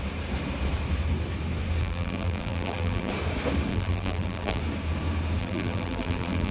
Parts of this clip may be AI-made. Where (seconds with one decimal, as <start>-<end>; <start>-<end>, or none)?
1.8-3.1; 3.7-4.6; 5.4-6.5